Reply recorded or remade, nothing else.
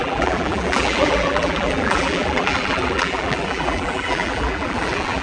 remade